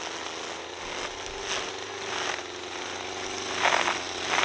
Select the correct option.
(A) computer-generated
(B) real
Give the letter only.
B